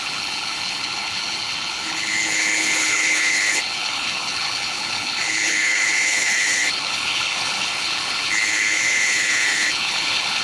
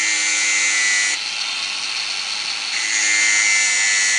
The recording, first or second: second